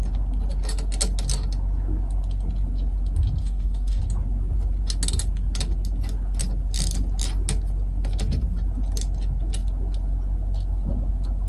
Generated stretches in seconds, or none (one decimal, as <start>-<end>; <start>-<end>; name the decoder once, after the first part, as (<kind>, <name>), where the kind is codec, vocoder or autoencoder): 3.4-4.0 (codec, DAC)